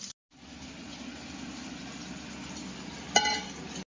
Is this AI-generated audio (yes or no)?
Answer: no